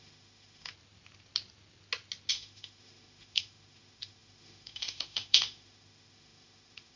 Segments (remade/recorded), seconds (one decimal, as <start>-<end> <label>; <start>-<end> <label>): 0.0-0.7 remade; 0.7-2.3 recorded; 2.3-7.0 remade